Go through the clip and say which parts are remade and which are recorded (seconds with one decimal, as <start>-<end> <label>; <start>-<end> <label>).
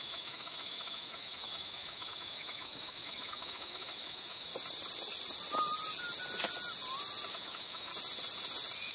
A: 0.0-4.5 remade; 4.5-7.3 recorded; 7.3-7.9 remade; 7.9-8.9 recorded